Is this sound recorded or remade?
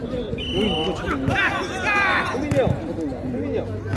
recorded